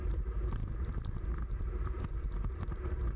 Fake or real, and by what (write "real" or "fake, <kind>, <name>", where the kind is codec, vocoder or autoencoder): fake, vocoder, BigVGAN v2